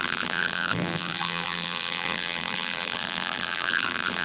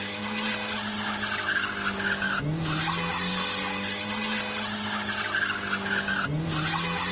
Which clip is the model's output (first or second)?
first